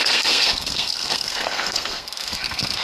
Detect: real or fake fake